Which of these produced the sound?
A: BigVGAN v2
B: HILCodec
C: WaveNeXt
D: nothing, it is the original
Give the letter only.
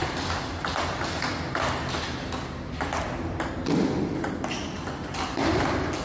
D